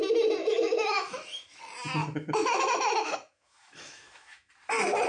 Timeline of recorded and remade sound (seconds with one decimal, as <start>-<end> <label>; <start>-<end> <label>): 0.0-0.4 recorded; 0.4-1.6 remade; 1.6-2.0 recorded; 2.0-4.5 remade; 4.5-5.1 recorded